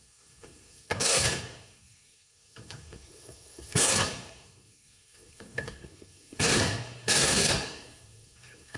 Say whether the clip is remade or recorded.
remade